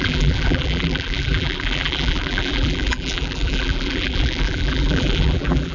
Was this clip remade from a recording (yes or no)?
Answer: yes